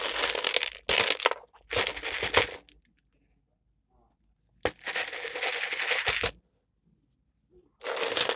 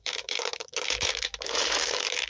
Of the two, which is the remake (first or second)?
second